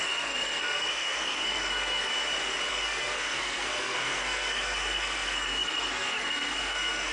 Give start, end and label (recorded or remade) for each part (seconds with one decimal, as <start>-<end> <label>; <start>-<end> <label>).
0.0-2.1 remade; 2.1-2.7 recorded; 2.7-7.1 remade